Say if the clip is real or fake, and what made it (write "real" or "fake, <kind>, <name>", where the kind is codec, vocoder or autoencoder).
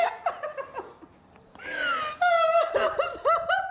real